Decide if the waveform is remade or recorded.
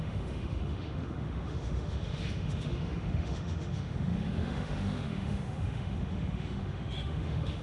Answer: remade